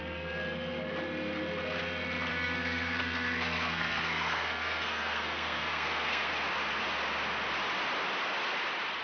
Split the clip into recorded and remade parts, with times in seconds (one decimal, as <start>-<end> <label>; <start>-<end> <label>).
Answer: 0.0-2.3 recorded; 2.3-6.3 remade; 6.3-9.0 recorded